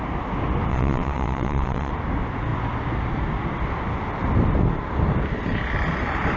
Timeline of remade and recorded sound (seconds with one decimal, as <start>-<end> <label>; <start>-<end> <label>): 0.0-0.7 recorded; 0.7-1.9 remade; 1.9-6.4 recorded